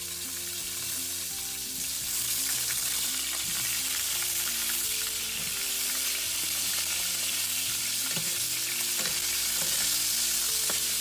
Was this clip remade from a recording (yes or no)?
no